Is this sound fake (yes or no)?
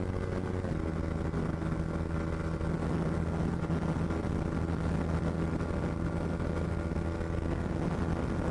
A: no